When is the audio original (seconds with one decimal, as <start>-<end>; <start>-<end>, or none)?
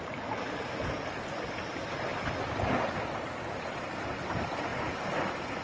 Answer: 0.0-5.6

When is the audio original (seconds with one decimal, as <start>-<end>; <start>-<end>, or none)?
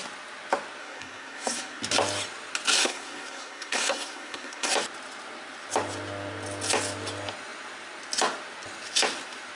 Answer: 0.0-0.8; 1.8-2.8; 4.7-9.6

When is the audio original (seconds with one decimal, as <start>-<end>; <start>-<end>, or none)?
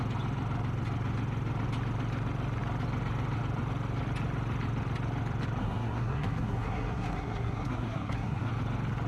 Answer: 0.0-5.6; 8.5-9.1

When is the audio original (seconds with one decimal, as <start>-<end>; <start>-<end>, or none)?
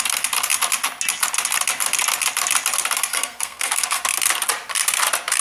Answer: 0.0-3.1; 4.0-5.4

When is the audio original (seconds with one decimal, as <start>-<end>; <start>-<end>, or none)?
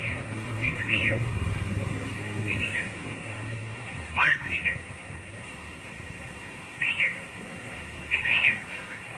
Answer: none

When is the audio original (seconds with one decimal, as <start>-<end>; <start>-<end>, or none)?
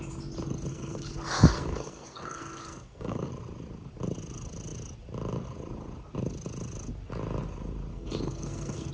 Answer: 0.0-0.7; 3.3-7.9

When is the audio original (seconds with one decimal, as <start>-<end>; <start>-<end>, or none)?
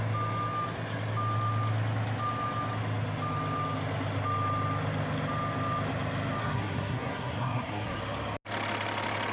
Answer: 0.0-6.4; 8.0-9.3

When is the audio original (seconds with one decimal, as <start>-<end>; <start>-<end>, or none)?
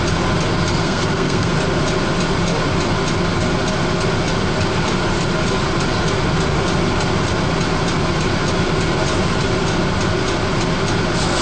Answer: 0.0-0.8; 1.5-11.4